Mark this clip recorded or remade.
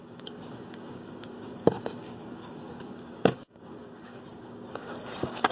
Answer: remade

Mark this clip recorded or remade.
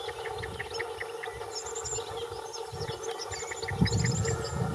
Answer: recorded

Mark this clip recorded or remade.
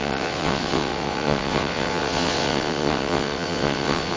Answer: remade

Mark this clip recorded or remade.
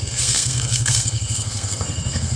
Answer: remade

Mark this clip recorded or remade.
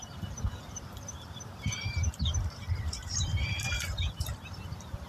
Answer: remade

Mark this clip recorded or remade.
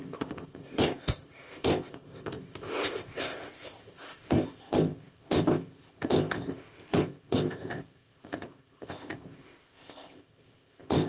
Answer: remade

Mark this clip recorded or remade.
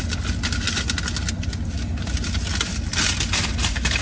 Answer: recorded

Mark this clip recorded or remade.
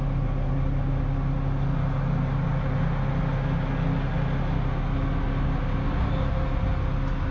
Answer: recorded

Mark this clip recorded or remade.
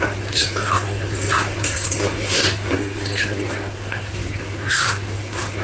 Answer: remade